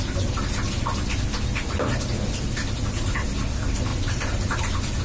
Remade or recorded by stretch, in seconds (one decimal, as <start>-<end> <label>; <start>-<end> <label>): 0.0-3.9 recorded; 3.9-4.6 remade; 4.6-5.0 recorded